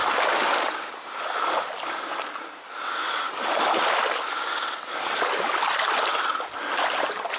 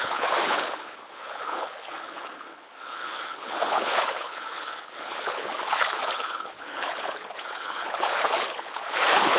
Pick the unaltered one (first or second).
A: first